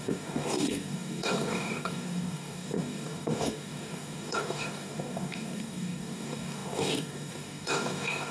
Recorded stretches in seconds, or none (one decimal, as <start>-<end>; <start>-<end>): none